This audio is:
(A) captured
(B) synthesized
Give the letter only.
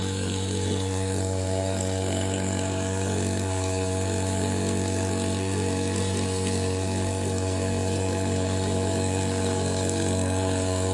B